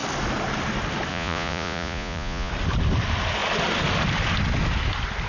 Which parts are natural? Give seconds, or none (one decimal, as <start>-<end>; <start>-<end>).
0.0-1.1; 2.5-5.3